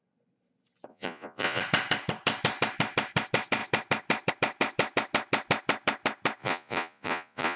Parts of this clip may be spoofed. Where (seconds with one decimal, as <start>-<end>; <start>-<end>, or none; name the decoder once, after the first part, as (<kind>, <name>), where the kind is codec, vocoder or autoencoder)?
0.9-1.6 (vocoder, Vocos); 6.4-7.6